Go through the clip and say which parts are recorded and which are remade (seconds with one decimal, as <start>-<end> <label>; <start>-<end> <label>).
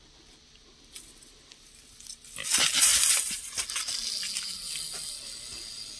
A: 0.0-6.0 recorded